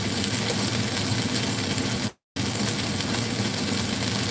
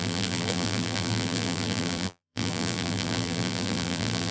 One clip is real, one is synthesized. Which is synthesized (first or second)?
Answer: second